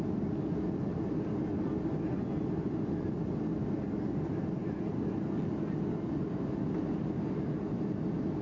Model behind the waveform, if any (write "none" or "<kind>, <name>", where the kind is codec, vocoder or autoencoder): none